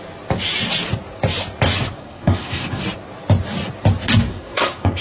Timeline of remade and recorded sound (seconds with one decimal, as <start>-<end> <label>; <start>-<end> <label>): 0.0-2.0 recorded; 2.0-2.8 remade; 2.8-4.3 recorded; 4.3-5.0 remade